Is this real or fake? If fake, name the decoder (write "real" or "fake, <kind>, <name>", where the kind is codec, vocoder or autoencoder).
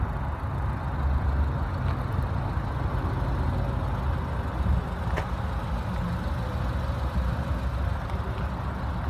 real